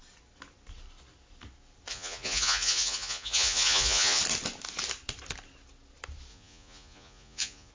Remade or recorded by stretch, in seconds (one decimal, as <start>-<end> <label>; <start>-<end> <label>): 0.0-1.9 recorded; 1.9-4.2 remade; 4.2-6.3 recorded; 6.3-7.7 remade

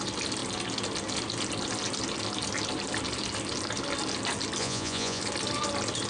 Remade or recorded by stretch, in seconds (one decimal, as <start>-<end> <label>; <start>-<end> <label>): 0.0-4.6 recorded; 4.6-5.2 remade; 5.2-6.1 recorded

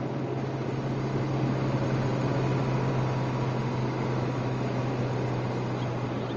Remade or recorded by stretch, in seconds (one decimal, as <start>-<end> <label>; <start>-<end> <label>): 0.0-3.8 recorded; 3.8-4.8 remade; 4.8-6.4 recorded

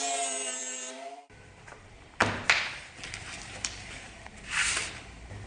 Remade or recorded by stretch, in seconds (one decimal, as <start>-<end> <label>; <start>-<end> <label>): 0.0-2.2 remade; 2.2-3.2 recorded; 3.2-5.5 remade

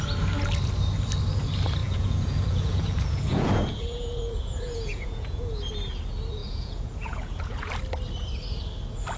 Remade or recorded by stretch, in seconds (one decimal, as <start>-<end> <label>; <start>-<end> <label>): 0.0-1.8 recorded; 1.8-5.7 remade; 5.7-6.4 recorded; 6.4-7.7 remade; 7.7-9.2 recorded

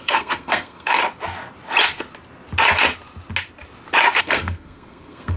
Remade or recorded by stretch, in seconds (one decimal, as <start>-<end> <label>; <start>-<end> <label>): 0.0-1.0 remade; 1.0-4.2 recorded; 4.2-5.4 remade

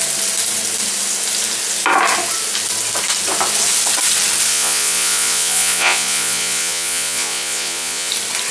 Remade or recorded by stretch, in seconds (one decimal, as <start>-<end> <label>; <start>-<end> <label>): 0.0-4.5 recorded; 4.5-8.1 remade; 8.1-8.5 recorded